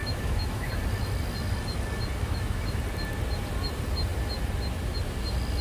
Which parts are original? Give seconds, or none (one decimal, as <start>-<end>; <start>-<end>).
0.7-2.2; 2.8-5.6